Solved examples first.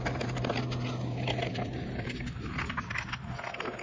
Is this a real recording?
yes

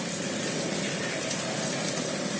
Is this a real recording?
yes